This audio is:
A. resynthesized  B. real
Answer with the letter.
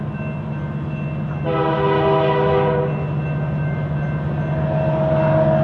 B